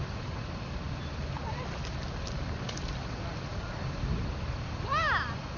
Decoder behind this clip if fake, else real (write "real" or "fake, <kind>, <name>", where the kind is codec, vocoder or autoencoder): real